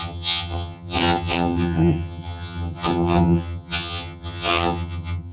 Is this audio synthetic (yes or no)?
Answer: yes